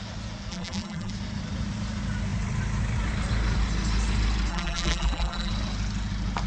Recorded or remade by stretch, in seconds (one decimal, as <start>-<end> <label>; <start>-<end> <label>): 0.0-0.5 recorded; 0.5-1.1 remade; 1.1-4.5 recorded; 4.5-5.5 remade; 5.5-6.5 recorded